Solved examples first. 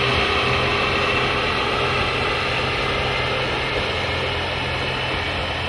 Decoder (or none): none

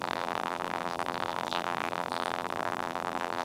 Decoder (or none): vocoder, BigVGAN v2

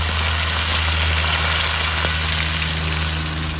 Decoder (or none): none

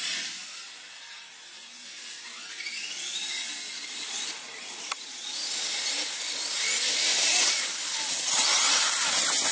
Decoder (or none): none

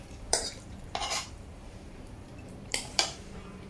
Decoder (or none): vocoder, BigVGAN v2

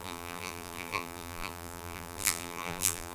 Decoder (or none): vocoder, BigVGAN v2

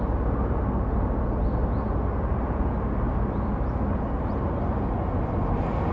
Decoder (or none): none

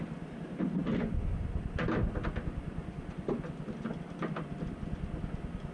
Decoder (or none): none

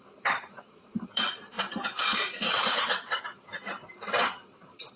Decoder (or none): vocoder, BigVGAN v2